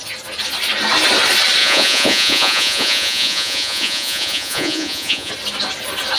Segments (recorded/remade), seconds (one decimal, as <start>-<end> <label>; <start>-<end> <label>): 0.0-1.6 recorded; 1.6-5.3 remade; 5.3-6.2 recorded